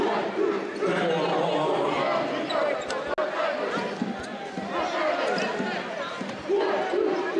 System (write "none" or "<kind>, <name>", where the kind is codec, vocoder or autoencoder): none